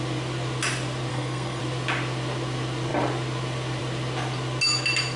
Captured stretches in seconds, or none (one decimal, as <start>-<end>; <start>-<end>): 0.0-1.1; 1.6-5.2